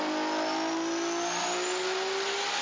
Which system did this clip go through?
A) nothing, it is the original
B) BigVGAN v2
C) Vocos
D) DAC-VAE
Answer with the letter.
A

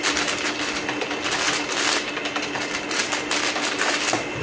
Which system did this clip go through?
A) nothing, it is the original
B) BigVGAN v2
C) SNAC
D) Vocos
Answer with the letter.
A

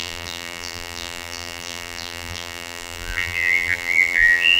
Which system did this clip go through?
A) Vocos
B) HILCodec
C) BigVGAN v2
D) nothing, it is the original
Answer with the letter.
C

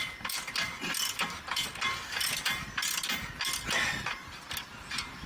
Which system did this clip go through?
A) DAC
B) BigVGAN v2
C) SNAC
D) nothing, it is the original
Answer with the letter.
D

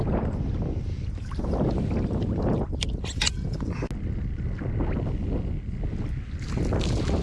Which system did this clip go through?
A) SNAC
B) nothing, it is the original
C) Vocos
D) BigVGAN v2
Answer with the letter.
B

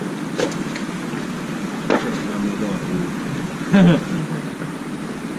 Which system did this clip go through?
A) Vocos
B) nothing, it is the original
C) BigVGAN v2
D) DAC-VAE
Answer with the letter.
B